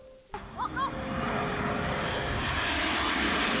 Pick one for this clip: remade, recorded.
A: recorded